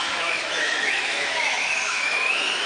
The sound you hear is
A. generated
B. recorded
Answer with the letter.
A